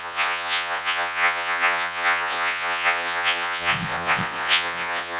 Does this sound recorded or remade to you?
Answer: remade